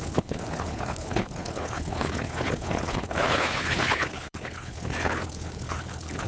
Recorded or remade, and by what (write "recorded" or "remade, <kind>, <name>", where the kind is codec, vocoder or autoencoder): remade, codec, HILCodec